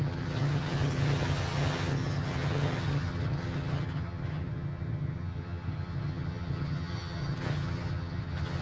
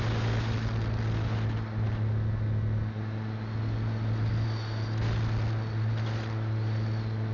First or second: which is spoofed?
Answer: first